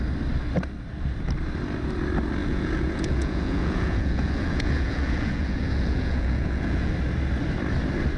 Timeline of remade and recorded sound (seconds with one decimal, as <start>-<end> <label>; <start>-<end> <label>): 0.0-2.4 recorded; 2.4-6.9 remade; 6.9-8.2 recorded